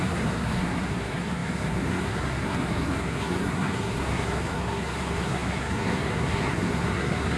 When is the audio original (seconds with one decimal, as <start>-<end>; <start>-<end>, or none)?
none